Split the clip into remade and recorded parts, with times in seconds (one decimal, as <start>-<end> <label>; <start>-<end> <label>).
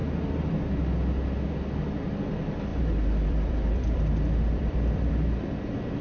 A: 0.0-2.7 recorded; 2.7-5.1 remade; 5.1-6.0 recorded